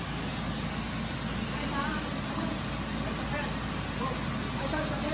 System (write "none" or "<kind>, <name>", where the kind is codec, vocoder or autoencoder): none